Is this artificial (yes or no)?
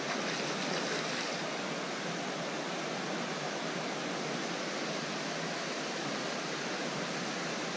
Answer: no